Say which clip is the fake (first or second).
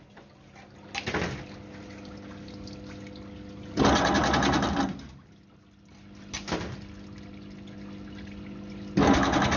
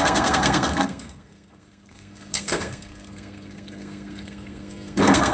second